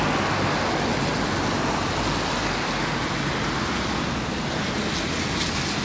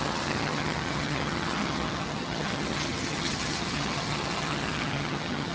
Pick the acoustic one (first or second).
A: first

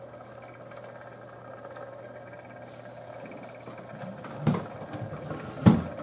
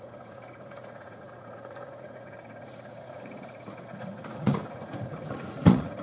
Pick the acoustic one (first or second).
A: first